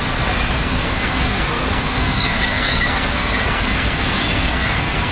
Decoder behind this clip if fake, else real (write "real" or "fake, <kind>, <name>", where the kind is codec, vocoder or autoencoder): fake, codec, SNAC